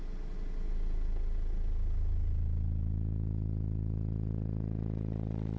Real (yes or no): yes